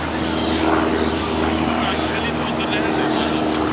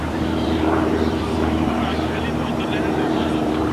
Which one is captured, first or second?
first